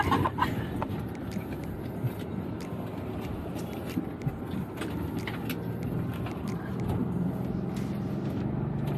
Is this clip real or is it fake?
real